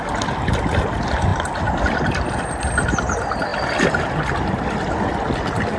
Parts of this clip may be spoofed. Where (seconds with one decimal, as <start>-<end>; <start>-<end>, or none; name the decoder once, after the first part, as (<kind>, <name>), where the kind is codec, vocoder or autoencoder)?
none